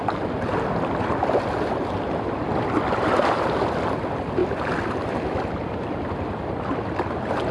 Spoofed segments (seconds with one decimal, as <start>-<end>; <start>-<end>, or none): none